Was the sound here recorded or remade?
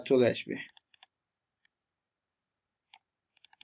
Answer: remade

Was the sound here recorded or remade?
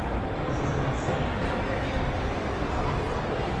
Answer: recorded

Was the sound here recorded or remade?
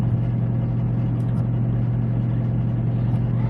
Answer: recorded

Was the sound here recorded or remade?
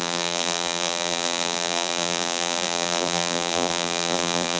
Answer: remade